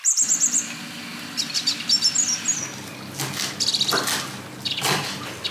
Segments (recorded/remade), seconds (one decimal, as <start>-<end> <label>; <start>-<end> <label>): 0.0-5.5 recorded